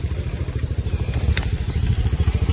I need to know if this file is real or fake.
fake